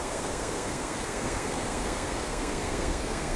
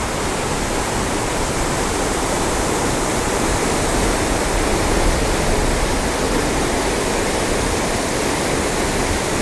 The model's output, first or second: first